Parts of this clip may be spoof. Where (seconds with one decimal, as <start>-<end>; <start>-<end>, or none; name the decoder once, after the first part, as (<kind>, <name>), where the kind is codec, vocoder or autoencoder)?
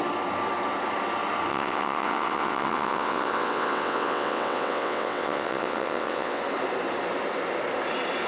1.5-6.4 (vocoder, WaveNeXt)